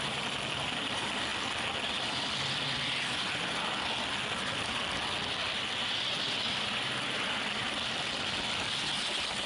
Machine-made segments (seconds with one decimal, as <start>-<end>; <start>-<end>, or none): none